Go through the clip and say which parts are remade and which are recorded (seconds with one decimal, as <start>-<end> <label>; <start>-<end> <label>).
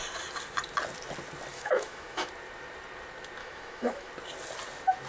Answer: 0.0-1.5 recorded; 1.5-2.3 remade; 2.3-3.4 recorded; 3.4-4.1 remade; 4.1-5.1 recorded